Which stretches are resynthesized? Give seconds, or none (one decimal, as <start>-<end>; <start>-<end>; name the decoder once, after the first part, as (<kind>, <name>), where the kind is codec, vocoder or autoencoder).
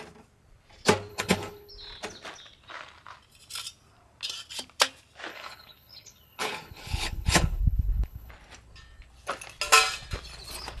1.1-1.7 (codec, HILCodec); 5.3-8.3